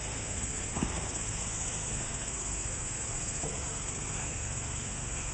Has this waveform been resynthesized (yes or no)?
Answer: yes